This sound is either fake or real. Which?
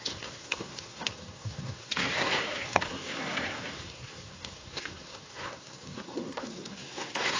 fake